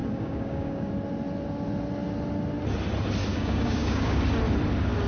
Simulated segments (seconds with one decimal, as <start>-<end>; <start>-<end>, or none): 0.0-0.9; 3.3-4.2